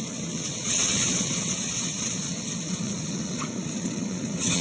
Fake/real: fake